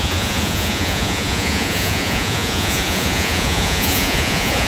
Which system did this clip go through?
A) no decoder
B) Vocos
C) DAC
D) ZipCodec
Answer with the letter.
B